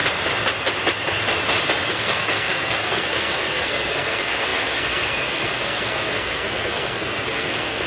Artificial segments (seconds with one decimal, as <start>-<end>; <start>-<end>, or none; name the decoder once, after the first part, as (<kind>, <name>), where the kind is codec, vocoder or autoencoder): 1.9-7.9 (codec, SNAC)